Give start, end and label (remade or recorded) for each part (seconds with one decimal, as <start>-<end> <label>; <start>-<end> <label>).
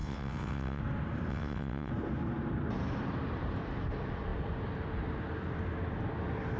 0.0-0.8 remade; 0.8-1.3 recorded; 1.3-1.9 remade; 1.9-6.6 recorded